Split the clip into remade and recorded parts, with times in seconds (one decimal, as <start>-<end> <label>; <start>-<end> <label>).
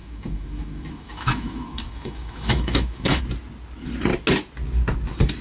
0.0-3.2 remade; 3.2-5.4 recorded